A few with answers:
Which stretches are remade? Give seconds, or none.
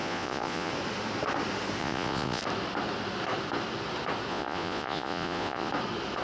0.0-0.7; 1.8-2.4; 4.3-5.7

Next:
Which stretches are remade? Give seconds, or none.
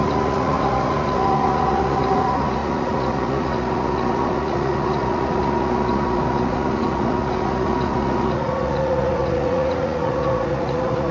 0.0-11.1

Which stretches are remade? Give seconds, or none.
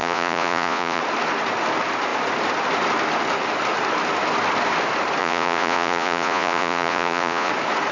0.0-1.0; 5.2-7.5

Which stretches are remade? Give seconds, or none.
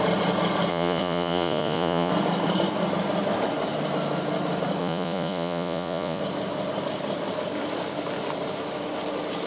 0.7-2.1; 4.8-6.2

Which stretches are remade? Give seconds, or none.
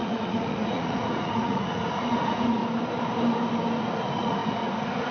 0.0-2.6; 3.8-5.1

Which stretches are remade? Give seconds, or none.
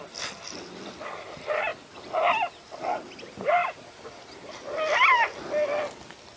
none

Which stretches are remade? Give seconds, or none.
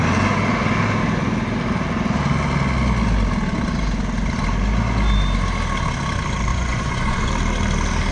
6.5-7.3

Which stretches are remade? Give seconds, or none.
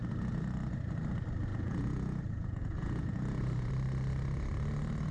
1.5-3.7